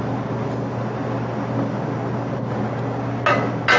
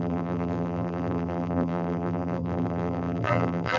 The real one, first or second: first